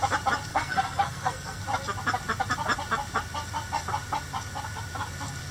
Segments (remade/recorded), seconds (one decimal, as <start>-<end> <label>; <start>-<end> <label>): 0.0-0.5 recorded; 0.5-1.6 remade; 1.6-5.5 recorded